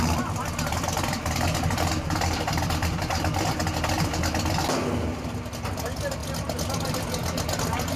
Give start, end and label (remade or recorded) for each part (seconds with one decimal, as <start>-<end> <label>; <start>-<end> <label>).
0.0-0.7 recorded; 0.7-3.6 remade; 3.6-8.0 recorded